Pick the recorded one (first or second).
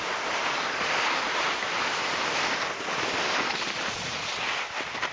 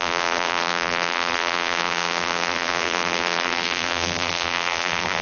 first